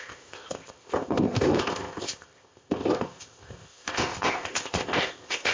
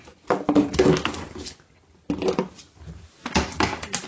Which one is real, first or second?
second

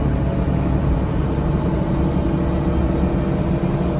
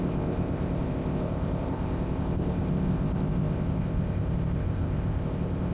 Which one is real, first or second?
first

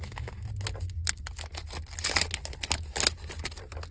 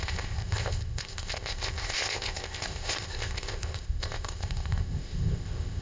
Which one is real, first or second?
first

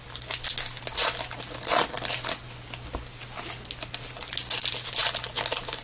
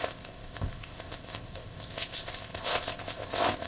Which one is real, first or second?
first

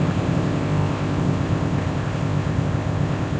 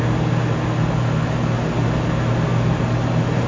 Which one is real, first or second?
second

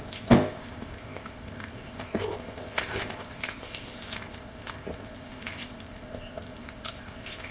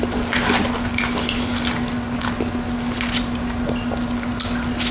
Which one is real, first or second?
second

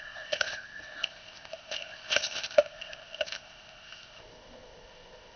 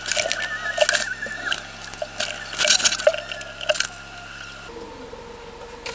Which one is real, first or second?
second